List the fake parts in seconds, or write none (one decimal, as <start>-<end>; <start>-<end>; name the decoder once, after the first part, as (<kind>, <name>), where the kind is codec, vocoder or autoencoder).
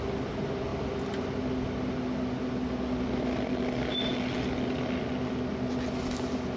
0.7-1.4 (vocoder, BigVGAN v2)